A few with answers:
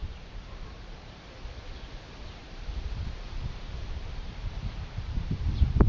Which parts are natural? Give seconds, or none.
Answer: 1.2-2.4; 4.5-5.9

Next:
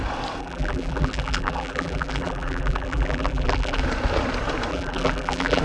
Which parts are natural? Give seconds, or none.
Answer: 0.0-0.4; 3.8-4.7

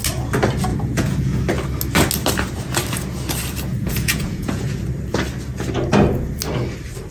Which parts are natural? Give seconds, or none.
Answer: 0.0-0.7; 1.4-3.7; 4.8-7.1